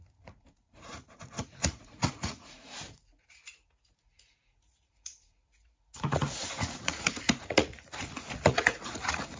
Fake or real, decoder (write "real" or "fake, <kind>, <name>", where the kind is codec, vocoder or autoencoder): fake, vocoder, Vocos